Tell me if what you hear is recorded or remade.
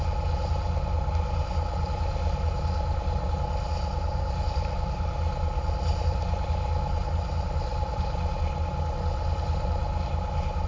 recorded